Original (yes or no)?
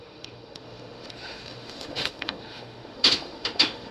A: no